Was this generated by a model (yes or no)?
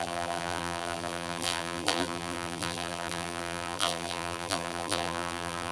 yes